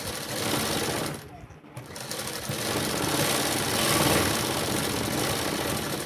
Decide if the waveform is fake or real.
real